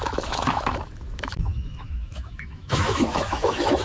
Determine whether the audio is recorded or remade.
remade